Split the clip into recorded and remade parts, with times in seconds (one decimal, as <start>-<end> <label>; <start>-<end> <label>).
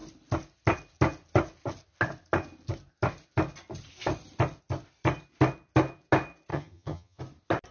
0.0-6.5 recorded; 6.5-7.2 remade; 7.2-7.7 recorded